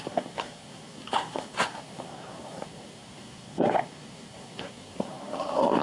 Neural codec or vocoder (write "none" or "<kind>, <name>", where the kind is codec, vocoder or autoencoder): codec, SNAC